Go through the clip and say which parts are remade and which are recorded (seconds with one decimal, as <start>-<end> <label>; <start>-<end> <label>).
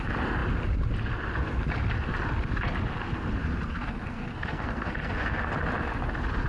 0.0-3.7 recorded; 3.7-5.5 remade; 5.5-6.5 recorded